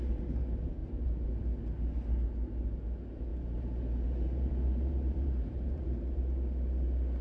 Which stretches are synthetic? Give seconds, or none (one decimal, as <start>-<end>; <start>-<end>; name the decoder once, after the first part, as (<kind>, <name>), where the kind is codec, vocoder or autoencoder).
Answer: 0.8-1.4 (vocoder, BigVGAN v2); 3.3-6.2